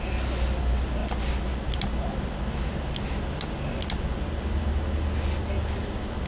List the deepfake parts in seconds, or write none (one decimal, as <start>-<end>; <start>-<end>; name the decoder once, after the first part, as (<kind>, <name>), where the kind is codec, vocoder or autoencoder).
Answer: none